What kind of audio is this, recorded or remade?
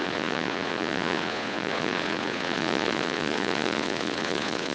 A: remade